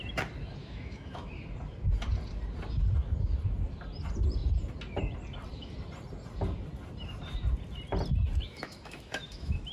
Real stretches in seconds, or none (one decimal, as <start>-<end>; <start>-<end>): 0.0-0.6; 1.3-8.5